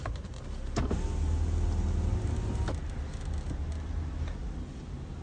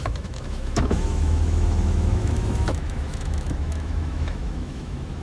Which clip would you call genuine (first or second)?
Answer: first